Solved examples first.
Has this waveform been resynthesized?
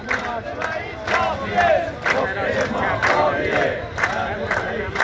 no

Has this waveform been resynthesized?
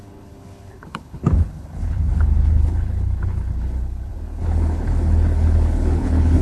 yes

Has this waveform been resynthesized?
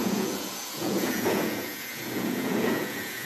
yes